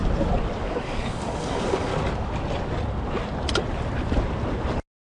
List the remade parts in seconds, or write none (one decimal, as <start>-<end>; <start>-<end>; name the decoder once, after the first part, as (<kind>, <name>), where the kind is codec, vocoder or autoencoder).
0.6-1.9 (codec, DAC)